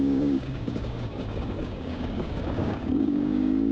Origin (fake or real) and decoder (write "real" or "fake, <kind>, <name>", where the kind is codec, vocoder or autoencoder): fake, codec, DAC